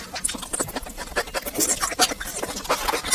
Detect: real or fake fake